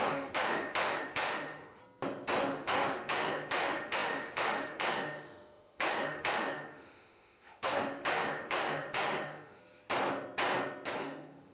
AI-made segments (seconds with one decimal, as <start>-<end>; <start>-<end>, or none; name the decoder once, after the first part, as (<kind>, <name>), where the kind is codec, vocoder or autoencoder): 0.0-1.8 (autoencoder, DAC-VAE); 2.4-9.6; 11.0-11.5